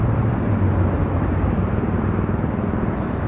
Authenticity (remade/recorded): recorded